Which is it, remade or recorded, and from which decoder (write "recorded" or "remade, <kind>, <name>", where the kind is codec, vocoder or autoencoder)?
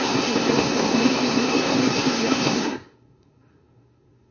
remade, codec, SNAC